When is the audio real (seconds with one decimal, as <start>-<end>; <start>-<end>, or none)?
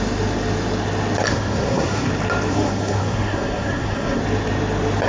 0.0-1.3; 2.1-2.5; 4.2-5.1